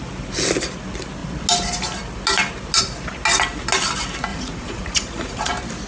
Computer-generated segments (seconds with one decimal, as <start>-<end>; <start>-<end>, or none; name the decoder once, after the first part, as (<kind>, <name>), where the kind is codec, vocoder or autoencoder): 4.3-5.5 (vocoder, Vocos)